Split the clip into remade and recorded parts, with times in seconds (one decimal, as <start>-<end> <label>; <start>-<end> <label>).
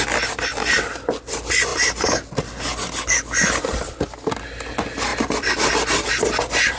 0.0-6.8 recorded